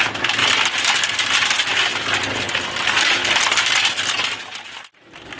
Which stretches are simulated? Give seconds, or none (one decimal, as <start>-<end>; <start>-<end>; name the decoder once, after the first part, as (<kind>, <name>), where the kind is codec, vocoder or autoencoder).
none